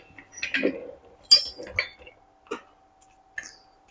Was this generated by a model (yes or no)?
no